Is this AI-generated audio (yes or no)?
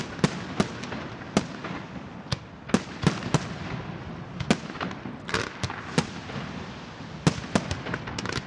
no